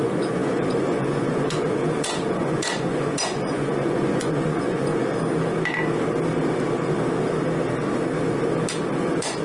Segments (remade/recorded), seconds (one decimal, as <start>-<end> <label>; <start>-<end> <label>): 0.0-4.9 remade; 4.9-8.9 recorded; 8.9-9.4 remade